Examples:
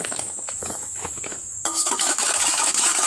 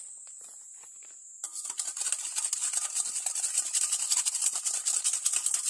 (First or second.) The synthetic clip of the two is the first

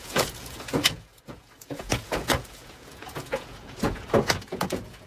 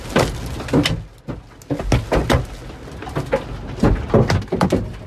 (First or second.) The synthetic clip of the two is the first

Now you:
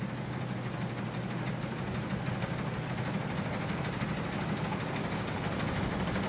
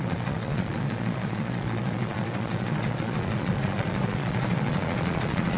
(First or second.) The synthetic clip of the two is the second